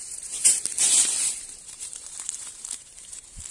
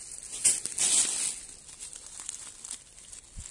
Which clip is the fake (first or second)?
first